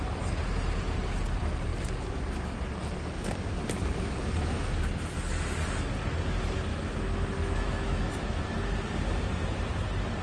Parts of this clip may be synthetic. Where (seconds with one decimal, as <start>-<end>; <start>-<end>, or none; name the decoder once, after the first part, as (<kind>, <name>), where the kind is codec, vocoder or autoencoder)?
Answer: 6.7-8.4 (autoencoder, DAC-VAE)